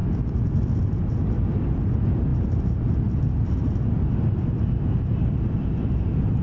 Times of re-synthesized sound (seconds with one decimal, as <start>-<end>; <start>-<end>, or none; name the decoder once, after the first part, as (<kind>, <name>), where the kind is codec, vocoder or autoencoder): none